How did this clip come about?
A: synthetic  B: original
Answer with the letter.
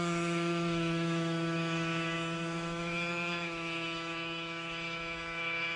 A